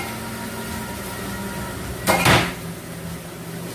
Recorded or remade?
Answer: recorded